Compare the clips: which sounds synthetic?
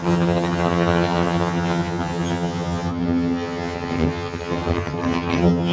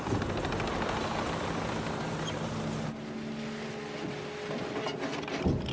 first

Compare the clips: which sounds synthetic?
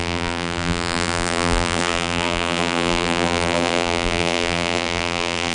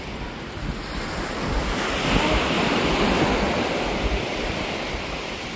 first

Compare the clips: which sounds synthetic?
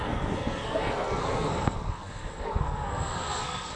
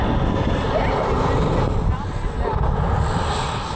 first